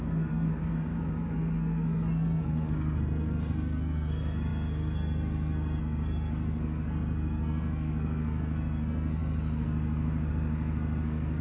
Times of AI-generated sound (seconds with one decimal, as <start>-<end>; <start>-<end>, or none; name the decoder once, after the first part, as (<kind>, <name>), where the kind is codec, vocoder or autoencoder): 0.0-11.4 (codec, SNAC)